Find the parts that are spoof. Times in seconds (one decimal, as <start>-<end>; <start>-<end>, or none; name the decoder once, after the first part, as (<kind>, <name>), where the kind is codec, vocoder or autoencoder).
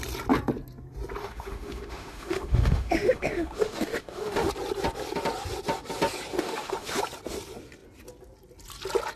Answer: 1.2-4.5 (autoencoder, DAC-VAE); 6.3-7.0